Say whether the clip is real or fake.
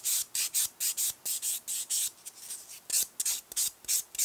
real